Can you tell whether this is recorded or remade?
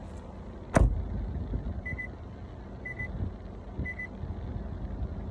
recorded